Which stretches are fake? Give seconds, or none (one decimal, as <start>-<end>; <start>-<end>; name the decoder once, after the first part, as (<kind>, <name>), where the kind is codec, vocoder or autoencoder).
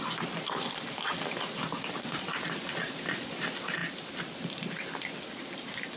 none